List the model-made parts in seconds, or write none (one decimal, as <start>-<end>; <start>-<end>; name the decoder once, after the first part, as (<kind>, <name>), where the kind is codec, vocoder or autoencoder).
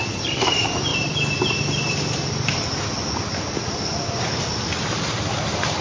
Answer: none